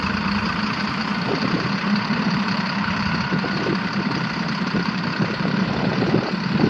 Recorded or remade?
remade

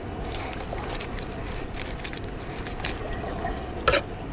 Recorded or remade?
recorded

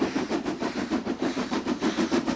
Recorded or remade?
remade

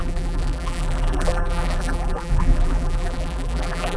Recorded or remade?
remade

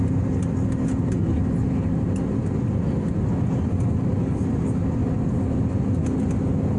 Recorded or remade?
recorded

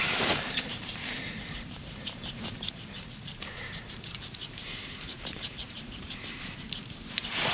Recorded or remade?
remade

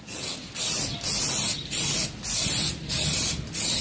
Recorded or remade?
recorded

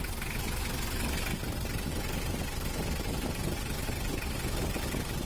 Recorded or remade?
recorded